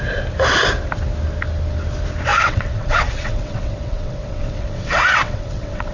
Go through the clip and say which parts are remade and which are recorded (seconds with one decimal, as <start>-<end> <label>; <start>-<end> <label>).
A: 0.0-2.3 recorded; 2.3-5.9 remade